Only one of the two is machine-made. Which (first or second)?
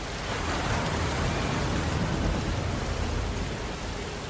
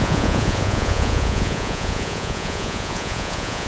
second